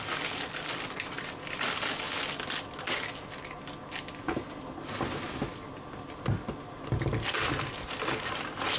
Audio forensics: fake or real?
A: real